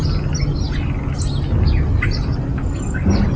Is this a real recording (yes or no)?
yes